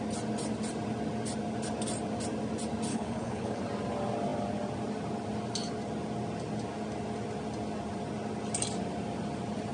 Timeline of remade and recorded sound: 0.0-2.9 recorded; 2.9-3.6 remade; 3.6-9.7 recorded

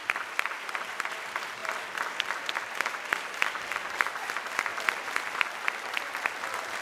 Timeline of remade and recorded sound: 0.0-6.8 recorded

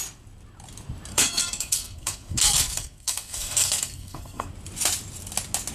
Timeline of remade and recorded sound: 0.0-1.1 recorded; 1.1-4.5 remade; 4.5-5.7 recorded